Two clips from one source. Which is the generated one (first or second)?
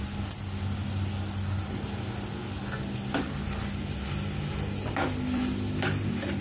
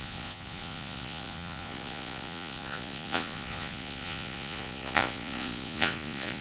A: second